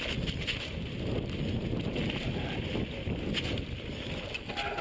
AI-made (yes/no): no